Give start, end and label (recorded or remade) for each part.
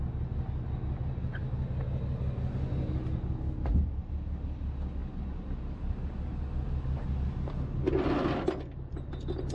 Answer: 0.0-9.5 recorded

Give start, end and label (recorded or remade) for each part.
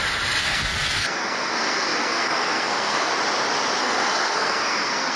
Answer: 0.0-0.4 recorded; 0.4-3.1 remade; 3.1-3.8 recorded; 3.8-5.2 remade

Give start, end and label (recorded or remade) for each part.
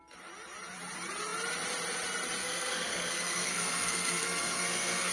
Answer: 0.0-2.4 recorded; 2.4-5.1 remade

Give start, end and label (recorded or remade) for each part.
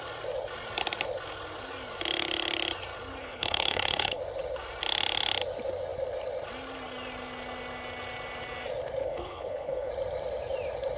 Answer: 0.0-3.2 recorded; 3.2-4.2 remade; 4.2-9.0 recorded; 9.0-9.9 remade; 9.9-11.0 recorded